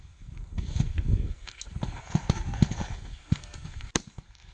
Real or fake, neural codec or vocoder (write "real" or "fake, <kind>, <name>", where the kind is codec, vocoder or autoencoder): fake, codec, SNAC